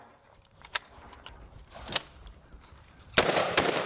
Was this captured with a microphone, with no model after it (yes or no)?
no